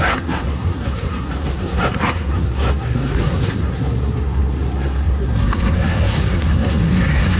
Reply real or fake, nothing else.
fake